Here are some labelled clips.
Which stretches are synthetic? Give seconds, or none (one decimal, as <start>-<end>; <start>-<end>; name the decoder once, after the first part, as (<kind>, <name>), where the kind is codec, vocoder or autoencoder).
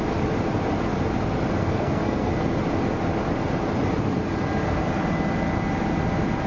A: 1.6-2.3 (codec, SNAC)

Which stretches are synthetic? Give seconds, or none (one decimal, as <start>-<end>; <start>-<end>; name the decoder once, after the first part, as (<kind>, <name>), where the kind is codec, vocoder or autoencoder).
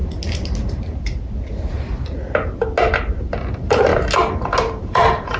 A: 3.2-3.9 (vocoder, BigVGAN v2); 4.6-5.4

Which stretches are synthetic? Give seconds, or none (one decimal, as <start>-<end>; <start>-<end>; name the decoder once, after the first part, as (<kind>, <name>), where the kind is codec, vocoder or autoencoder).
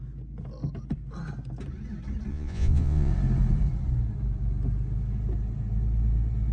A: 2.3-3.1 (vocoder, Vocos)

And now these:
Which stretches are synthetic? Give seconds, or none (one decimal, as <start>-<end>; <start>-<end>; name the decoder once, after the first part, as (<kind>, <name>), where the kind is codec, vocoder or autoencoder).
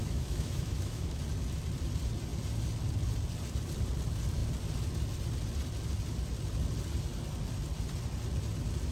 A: 0.0-1.2 (autoencoder, DAC-VAE)